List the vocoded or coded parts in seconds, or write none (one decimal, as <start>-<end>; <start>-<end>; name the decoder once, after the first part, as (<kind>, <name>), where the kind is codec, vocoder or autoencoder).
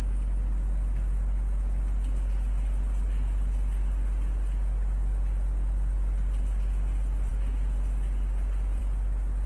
none